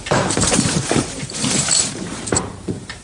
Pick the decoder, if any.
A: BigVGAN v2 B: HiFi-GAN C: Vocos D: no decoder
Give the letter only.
A